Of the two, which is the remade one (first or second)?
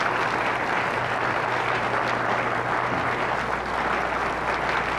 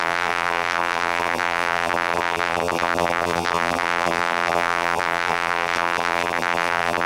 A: second